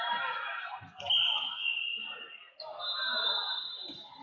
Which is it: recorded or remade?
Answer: recorded